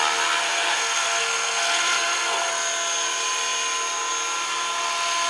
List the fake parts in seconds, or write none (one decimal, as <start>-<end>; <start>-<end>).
0.4-2.5